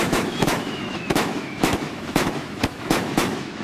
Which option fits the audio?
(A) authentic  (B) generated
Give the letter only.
B